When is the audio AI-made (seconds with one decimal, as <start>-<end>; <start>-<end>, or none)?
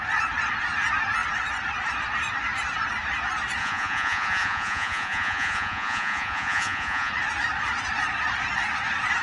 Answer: 3.6-7.1